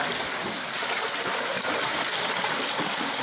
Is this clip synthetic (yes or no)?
no